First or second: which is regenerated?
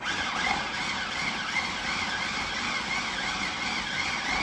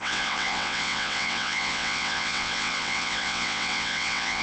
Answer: second